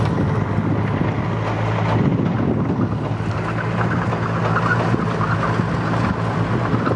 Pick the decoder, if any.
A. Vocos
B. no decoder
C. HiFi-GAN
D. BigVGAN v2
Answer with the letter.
B